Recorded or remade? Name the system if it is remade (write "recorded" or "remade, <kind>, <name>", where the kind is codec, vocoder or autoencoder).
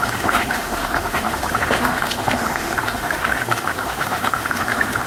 remade, autoencoder, DAC-VAE